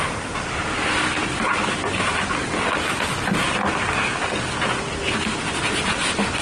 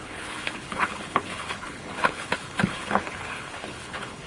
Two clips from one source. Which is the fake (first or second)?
second